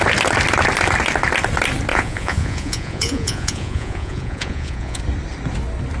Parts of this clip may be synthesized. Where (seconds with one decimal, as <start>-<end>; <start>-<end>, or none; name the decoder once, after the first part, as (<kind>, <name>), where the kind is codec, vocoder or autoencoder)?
1.9-5.0 (vocoder, Vocos)